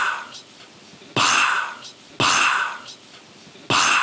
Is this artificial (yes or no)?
no